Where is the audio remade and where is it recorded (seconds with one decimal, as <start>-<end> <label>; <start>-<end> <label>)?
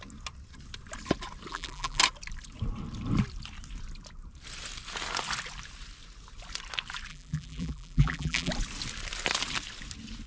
0.0-1.5 recorded; 1.5-2.0 remade; 2.0-7.1 recorded; 7.1-8.5 remade; 8.5-10.3 recorded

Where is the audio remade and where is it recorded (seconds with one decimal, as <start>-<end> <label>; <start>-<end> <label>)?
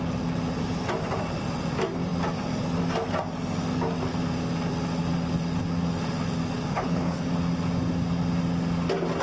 0.0-6.7 recorded; 6.7-7.3 remade; 7.3-9.2 recorded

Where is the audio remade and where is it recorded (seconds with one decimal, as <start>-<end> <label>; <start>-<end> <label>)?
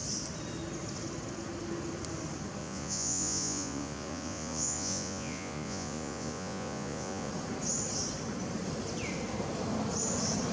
0.0-2.6 recorded; 2.6-7.3 remade; 7.3-10.5 recorded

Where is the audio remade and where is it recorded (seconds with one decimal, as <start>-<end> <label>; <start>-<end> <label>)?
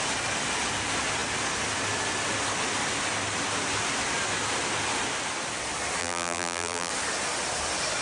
0.0-6.0 recorded; 6.0-6.9 remade; 6.9-8.0 recorded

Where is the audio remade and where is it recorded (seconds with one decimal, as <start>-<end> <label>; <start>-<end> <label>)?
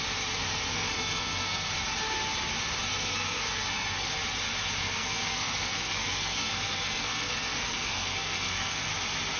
0.0-0.7 recorded; 0.7-1.7 remade; 1.7-2.9 recorded; 2.9-4.1 remade; 4.1-4.8 recorded; 4.8-8.9 remade; 8.9-9.4 recorded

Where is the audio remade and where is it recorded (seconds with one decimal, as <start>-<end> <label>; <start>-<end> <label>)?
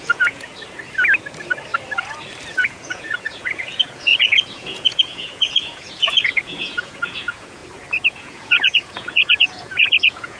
0.0-0.5 remade; 0.5-2.5 recorded; 2.5-7.6 remade; 7.6-8.1 recorded; 8.1-10.4 remade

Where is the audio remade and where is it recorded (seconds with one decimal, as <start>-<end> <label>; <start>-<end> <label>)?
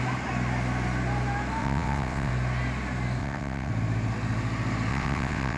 0.0-1.6 recorded; 1.6-2.3 remade; 2.3-3.2 recorded; 3.2-3.7 remade; 3.7-4.9 recorded; 4.9-5.6 remade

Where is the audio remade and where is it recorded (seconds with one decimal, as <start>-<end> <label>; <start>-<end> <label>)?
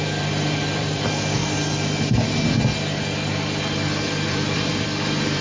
0.0-1.4 remade; 1.4-4.1 recorded; 4.1-5.4 remade